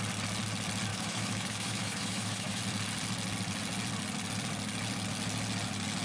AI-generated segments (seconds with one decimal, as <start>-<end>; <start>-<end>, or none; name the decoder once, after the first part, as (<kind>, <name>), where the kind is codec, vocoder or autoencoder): 0.9-2.6 (autoencoder, DAC-VAE)